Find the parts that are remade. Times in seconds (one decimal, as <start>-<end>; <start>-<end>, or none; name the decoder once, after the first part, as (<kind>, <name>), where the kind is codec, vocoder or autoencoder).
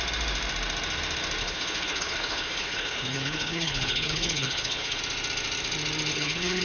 1.4-5.0 (codec, HILCodec); 6.1-6.6